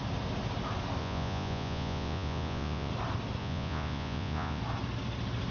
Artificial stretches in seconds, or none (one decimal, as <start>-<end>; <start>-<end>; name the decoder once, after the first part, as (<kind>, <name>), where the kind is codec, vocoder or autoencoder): 1.0-2.9 (vocoder, Vocos); 3.4-4.6